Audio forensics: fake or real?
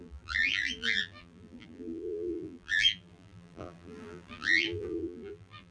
fake